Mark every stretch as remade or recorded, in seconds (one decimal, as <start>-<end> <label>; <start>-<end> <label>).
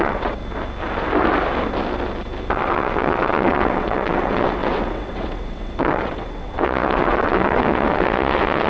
0.0-0.4 remade; 0.4-2.5 recorded; 2.5-8.7 remade